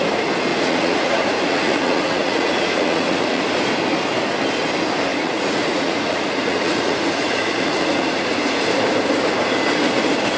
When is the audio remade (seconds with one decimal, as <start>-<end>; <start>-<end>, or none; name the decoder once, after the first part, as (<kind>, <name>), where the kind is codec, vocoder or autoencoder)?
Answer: 0.5-3.4 (vocoder, Vocos); 5.1-8.6